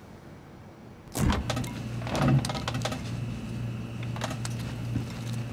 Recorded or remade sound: recorded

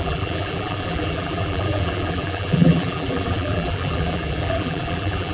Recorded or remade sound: remade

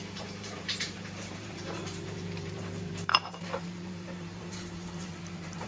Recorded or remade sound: remade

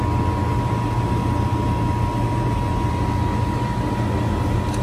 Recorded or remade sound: recorded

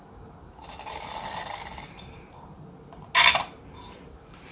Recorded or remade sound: recorded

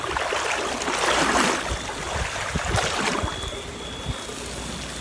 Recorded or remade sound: recorded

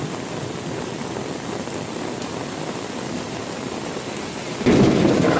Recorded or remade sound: recorded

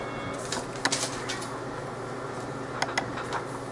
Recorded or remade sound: recorded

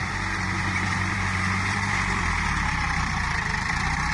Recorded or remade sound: remade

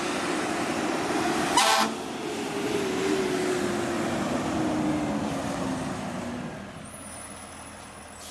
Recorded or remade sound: recorded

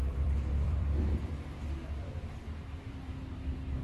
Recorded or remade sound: remade